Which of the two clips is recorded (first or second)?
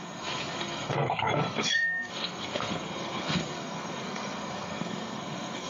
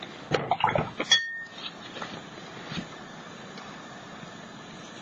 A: second